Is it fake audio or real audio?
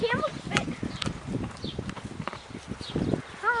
real